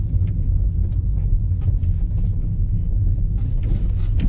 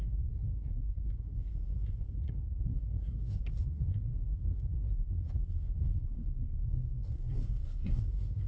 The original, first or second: first